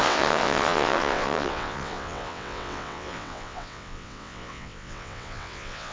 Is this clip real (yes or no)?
no